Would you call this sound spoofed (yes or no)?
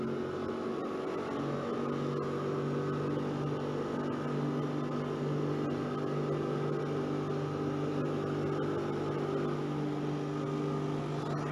no